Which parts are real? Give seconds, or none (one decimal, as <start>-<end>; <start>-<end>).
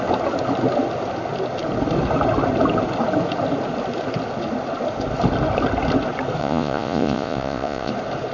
0.0-6.4; 7.9-8.3